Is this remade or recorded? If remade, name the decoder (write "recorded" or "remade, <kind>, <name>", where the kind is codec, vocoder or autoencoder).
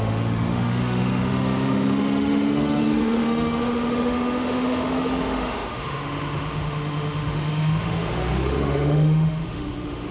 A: remade, autoencoder, DAC-VAE